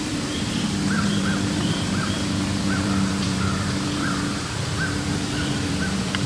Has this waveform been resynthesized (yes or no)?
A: yes